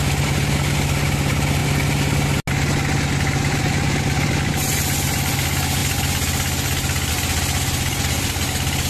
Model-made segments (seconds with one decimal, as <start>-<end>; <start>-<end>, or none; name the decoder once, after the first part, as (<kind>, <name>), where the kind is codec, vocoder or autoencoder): none